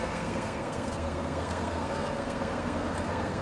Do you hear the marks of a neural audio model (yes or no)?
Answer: yes